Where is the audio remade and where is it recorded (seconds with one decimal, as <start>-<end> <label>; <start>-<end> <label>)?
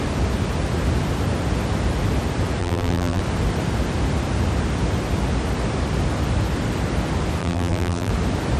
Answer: 0.0-2.6 recorded; 2.6-3.2 remade; 3.2-7.4 recorded; 7.4-8.1 remade; 8.1-8.6 recorded